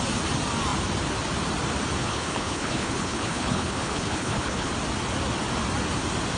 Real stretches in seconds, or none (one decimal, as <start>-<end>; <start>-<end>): 0.0-2.0; 4.7-6.4